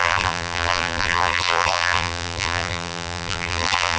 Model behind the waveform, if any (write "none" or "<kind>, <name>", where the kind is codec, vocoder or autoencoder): vocoder, BigVGAN v2